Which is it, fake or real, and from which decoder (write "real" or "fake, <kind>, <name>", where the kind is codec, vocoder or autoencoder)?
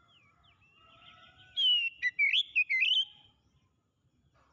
real